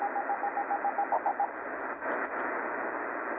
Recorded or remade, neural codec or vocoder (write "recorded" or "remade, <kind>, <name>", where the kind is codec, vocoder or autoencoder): recorded